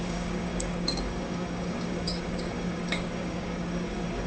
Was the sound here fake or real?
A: fake